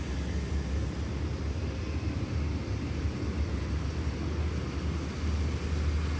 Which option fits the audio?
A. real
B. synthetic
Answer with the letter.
A